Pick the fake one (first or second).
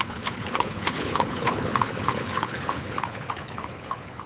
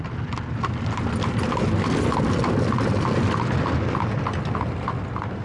first